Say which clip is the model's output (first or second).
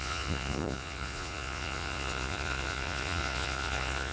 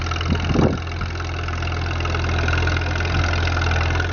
first